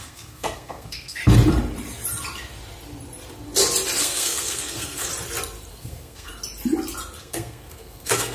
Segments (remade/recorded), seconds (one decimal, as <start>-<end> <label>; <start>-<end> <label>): 0.0-1.2 remade; 1.2-4.0 recorded; 4.0-5.1 remade; 5.1-5.7 recorded; 5.7-6.3 remade; 6.3-7.2 recorded; 7.2-8.3 remade